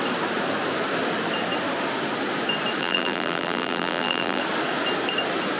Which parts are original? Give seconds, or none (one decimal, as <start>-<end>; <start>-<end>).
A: 0.0-2.8; 4.4-5.6